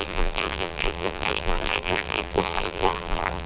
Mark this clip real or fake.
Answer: fake